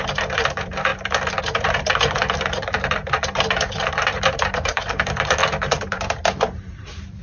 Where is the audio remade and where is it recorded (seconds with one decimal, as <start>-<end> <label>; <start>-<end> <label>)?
0.0-0.9 remade; 0.9-1.4 recorded; 1.4-7.2 remade